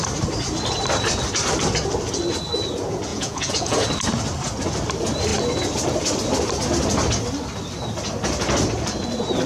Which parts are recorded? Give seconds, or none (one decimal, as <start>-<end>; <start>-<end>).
0.0-3.1; 3.9-9.5